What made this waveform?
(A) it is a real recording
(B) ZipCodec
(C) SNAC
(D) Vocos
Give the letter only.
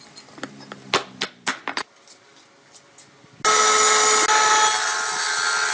A